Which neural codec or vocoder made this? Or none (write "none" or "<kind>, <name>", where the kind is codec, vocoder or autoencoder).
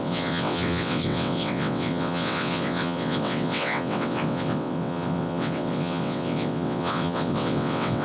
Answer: vocoder, WaveNeXt